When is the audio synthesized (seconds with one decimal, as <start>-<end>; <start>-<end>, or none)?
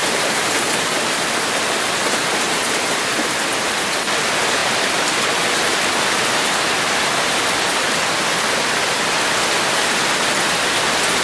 0.0-1.5; 4.6-7.1